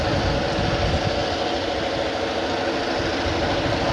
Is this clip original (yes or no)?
yes